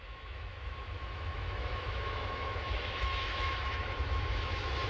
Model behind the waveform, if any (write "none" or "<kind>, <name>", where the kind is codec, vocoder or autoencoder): autoencoder, DAC-VAE